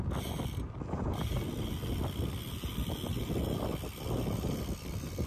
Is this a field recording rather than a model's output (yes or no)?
yes